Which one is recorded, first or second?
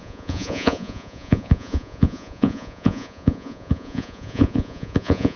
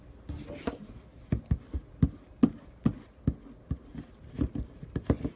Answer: second